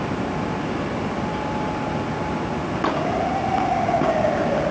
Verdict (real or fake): real